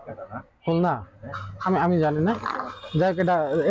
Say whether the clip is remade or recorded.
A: recorded